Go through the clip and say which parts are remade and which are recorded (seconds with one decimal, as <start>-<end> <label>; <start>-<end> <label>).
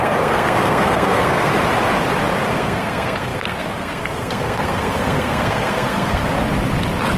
0.0-1.5 remade; 1.5-2.5 recorded; 2.5-6.2 remade; 6.2-7.2 recorded